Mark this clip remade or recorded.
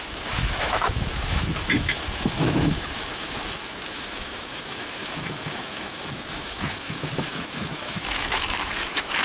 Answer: remade